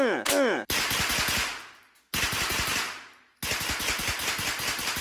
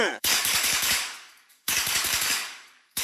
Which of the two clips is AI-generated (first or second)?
second